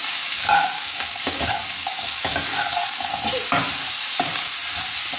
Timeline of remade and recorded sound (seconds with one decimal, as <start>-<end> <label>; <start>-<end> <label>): 0.0-3.1 remade; 3.1-4.0 recorded; 4.0-4.5 remade; 4.5-5.2 recorded